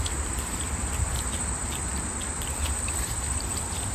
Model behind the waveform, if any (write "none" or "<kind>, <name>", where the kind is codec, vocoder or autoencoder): vocoder, BigVGAN v2